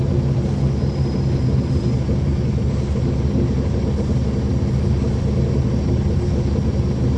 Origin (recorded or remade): recorded